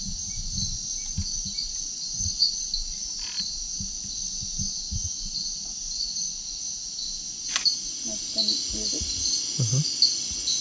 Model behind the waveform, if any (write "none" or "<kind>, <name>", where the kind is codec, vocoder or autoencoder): none